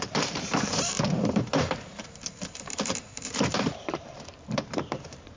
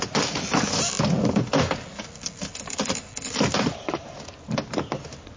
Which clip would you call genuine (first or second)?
second